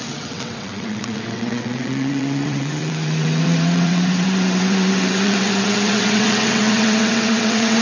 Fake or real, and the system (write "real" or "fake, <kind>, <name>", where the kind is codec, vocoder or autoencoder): fake, vocoder, WaveNeXt